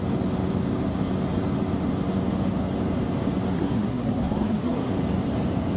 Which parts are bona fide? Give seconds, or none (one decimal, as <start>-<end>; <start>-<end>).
0.0-3.5; 4.9-5.8